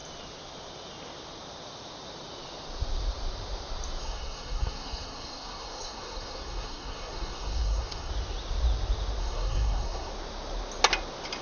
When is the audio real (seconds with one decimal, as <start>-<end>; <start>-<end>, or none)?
0.0-4.0; 8.1-9.2; 10.1-11.4